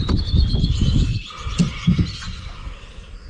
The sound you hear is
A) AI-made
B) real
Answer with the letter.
B